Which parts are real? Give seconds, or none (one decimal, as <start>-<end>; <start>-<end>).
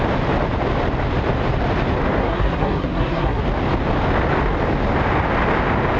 0.0-2.2; 3.4-6.0